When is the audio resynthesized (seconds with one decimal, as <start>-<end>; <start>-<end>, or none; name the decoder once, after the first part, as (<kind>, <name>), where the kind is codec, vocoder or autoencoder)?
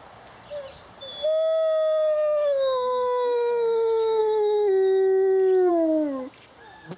none